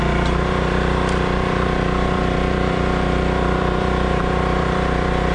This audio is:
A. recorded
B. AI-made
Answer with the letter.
B